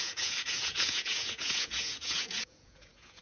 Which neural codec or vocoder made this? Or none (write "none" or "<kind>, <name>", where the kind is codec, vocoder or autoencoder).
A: vocoder, Vocos